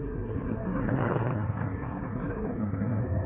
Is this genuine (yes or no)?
no